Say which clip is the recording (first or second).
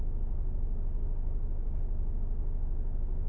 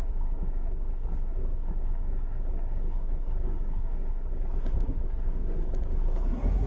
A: first